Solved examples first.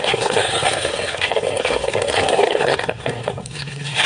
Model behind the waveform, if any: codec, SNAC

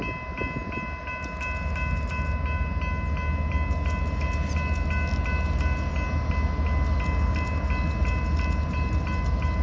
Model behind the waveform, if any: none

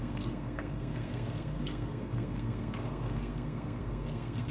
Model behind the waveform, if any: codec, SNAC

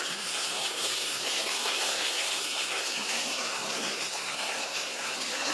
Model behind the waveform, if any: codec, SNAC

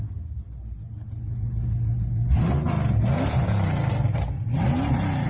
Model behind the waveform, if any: none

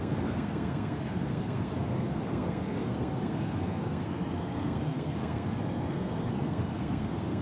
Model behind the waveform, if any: codec, SNAC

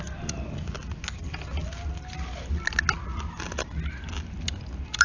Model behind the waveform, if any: none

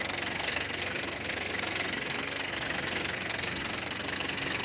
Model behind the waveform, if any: codec, SNAC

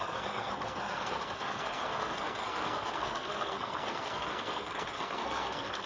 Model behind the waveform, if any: codec, SNAC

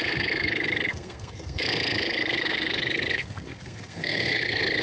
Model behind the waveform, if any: codec, SNAC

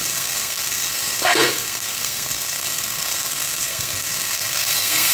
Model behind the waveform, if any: codec, SNAC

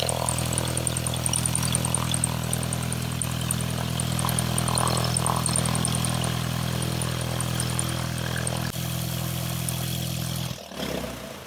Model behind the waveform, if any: none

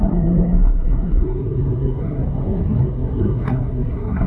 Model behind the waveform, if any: codec, SNAC